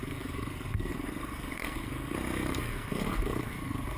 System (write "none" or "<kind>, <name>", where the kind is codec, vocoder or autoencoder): codec, SNAC